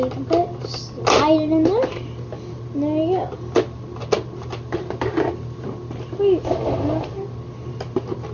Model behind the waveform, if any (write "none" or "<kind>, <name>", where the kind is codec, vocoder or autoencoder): none